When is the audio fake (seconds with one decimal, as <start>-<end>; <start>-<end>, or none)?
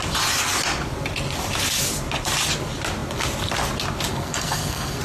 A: 4.1-5.0